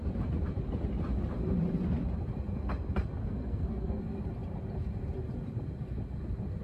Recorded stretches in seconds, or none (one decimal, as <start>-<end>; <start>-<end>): 0.0-3.2; 4.0-6.6